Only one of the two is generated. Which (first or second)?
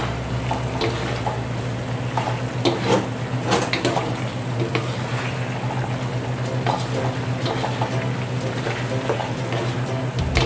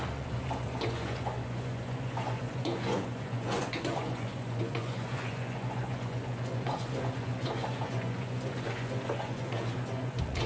second